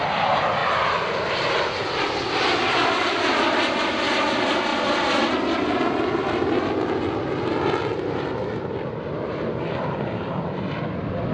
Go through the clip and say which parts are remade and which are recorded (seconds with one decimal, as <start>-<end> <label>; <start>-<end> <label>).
0.0-11.3 recorded